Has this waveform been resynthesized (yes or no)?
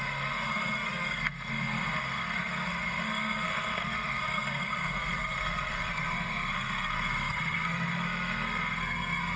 yes